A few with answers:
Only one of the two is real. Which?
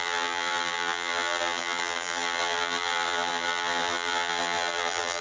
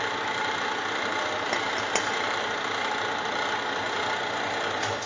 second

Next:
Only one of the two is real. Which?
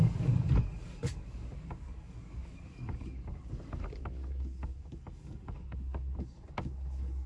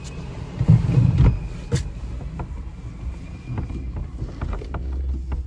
second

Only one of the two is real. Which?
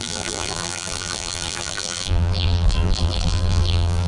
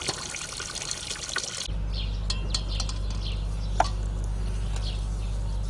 second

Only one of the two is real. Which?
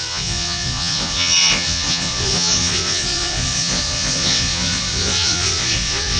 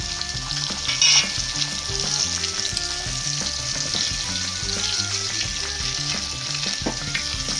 second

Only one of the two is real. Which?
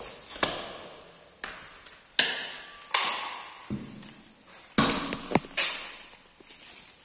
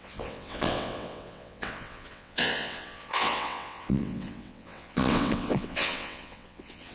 first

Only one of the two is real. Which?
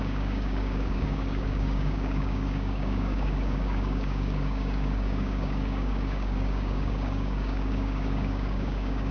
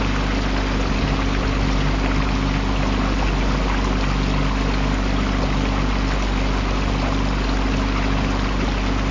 second